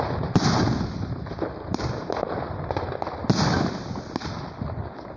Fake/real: real